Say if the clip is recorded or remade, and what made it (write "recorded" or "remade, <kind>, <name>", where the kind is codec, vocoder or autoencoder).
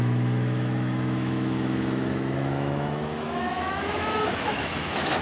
remade, autoencoder, DAC-VAE